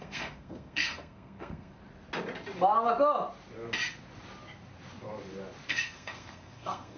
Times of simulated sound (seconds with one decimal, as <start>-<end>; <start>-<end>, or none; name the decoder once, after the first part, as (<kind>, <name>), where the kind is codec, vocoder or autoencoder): 0.0-1.8 (codec, SNAC); 5.7-7.0